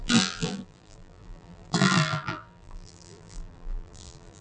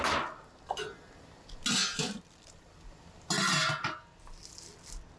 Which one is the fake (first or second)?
first